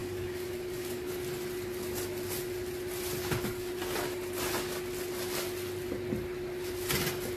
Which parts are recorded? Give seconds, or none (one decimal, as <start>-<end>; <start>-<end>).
1.1-3.2; 3.7-7.4